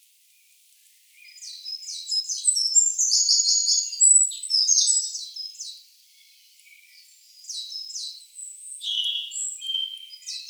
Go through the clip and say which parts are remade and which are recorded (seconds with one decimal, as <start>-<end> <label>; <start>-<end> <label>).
0.0-7.1 recorded; 7.1-9.6 remade; 9.6-10.5 recorded